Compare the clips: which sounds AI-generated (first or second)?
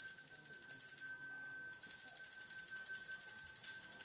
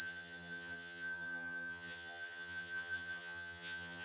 second